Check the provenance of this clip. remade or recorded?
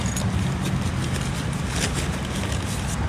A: recorded